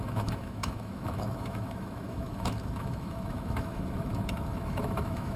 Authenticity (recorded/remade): remade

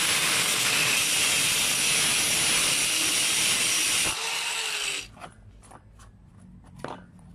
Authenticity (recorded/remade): recorded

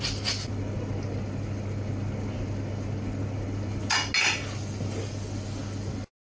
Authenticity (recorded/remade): recorded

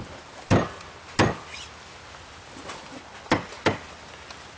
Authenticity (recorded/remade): recorded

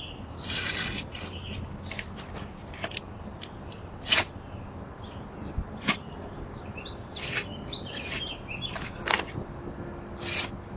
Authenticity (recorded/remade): recorded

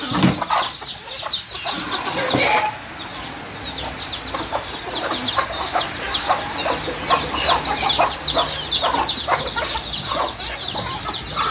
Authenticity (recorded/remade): recorded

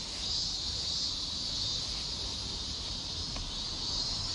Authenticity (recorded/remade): remade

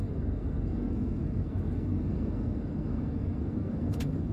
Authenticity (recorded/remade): remade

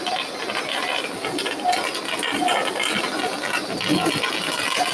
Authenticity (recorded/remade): recorded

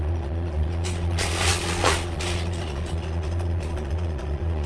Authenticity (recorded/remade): remade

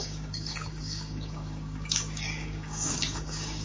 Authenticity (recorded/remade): remade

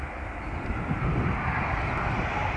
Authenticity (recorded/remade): recorded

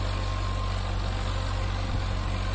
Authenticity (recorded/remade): recorded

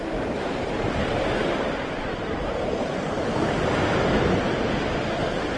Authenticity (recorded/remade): recorded